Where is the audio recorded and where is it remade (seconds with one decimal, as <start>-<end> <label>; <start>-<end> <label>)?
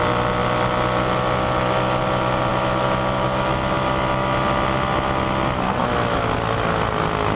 0.0-7.4 recorded